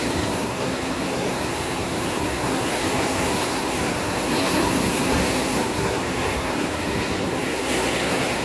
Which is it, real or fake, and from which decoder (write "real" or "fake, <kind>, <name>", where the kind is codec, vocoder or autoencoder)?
fake, codec, SNAC